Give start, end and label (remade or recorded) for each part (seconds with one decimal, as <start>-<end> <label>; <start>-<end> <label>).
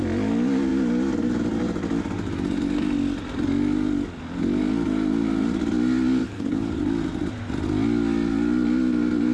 0.0-6.2 recorded; 6.2-6.8 remade; 6.8-9.3 recorded